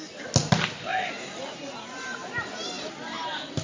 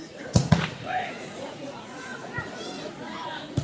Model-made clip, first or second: second